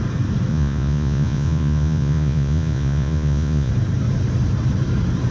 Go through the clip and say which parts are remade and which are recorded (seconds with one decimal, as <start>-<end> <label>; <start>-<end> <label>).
0.0-0.5 recorded; 0.5-3.7 remade; 3.7-5.3 recorded